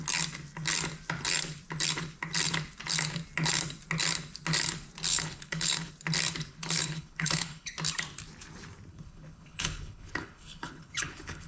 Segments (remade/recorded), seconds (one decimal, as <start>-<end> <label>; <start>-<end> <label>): 0.0-5.1 recorded; 5.1-5.9 remade; 5.9-6.5 recorded; 6.5-7.7 remade; 7.7-8.9 recorded; 8.9-11.5 remade